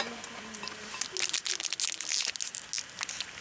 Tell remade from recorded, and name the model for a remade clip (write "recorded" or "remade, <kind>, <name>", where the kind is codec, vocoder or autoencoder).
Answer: recorded